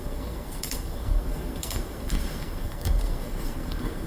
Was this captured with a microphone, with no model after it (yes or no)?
no